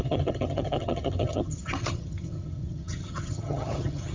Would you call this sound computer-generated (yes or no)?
yes